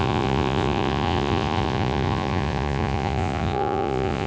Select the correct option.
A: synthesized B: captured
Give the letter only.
A